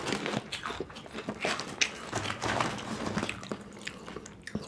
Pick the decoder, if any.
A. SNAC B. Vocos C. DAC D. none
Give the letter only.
D